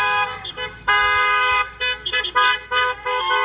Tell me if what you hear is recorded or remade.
remade